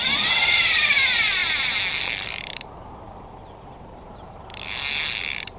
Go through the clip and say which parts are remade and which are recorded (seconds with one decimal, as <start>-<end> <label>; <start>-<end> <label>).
0.0-1.4 remade; 1.4-1.9 recorded; 1.9-4.5 remade; 4.5-5.1 recorded; 5.1-5.6 remade